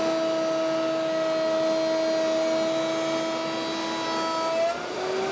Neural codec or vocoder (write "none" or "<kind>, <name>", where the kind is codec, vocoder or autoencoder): none